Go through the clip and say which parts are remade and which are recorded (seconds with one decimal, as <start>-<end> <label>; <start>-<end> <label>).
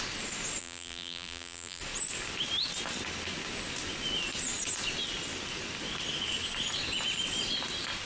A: 0.0-0.6 recorded; 0.6-1.8 remade; 1.8-8.1 recorded